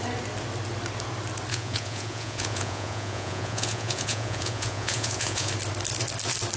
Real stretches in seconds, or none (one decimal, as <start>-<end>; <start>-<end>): 0.0-1.5; 5.5-6.6